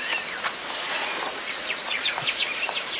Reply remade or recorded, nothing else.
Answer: remade